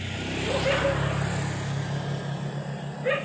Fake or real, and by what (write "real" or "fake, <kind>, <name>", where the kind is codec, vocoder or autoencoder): real